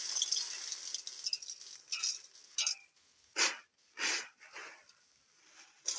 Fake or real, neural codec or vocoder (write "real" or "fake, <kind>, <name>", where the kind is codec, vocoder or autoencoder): real